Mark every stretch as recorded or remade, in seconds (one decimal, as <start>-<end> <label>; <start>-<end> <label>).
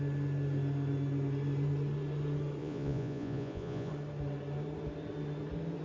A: 0.0-2.6 recorded; 2.6-3.9 remade; 3.9-5.8 recorded